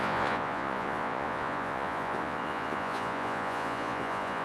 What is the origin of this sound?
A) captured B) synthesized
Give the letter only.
B